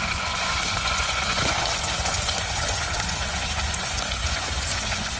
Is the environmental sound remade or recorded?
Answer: remade